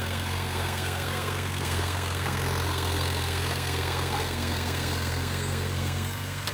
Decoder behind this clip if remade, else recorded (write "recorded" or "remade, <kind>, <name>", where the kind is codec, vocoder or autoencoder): remade, codec, SNAC